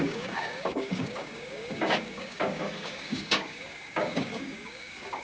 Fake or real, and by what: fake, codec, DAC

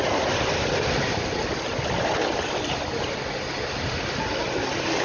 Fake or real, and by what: real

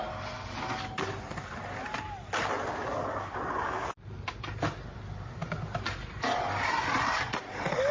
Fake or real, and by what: real